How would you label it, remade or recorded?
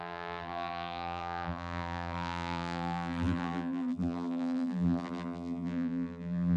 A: remade